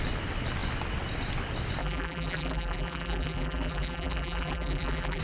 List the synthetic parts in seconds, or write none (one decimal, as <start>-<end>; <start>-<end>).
1.8-5.2